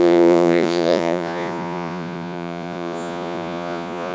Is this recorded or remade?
remade